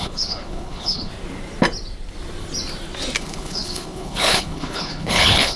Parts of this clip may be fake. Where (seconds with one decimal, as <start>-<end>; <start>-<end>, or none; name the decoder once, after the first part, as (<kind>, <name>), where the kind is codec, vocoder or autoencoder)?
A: 0.0-1.1 (codec, HILCodec); 3.2-5.6